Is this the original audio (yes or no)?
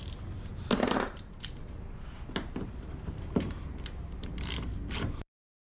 no